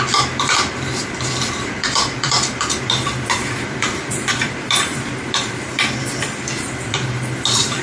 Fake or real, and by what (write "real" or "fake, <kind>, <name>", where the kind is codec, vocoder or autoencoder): fake, vocoder, BigVGAN v2